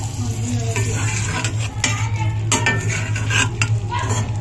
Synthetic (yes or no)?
no